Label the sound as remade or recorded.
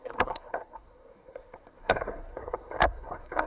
remade